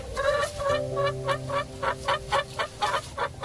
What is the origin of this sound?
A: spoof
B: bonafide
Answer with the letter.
B